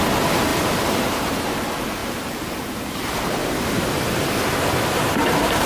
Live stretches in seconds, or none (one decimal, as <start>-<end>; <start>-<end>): 3.4-5.1